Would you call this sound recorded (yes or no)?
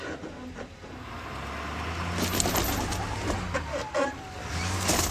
yes